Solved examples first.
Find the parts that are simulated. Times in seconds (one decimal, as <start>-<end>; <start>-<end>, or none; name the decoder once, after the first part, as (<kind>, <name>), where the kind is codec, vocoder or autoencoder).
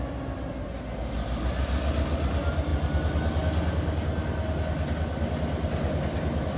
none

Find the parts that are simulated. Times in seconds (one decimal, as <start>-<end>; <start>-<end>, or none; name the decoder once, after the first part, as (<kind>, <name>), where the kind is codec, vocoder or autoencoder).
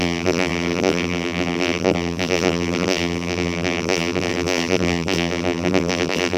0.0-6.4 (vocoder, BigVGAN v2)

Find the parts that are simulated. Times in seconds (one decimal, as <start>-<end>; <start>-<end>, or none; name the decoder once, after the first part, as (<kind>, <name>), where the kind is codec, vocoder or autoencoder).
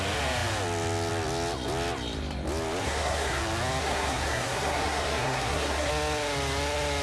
2.8-3.4 (codec, SNAC); 3.8-5.9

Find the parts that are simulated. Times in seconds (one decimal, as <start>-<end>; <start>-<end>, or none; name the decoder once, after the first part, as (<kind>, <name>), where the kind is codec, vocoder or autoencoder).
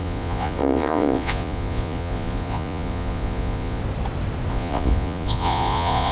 0.0-3.8 (vocoder, Vocos); 4.5-6.1